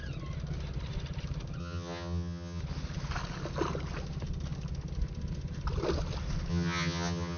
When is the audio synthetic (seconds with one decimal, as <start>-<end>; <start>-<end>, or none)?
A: 1.6-2.6; 6.5-7.4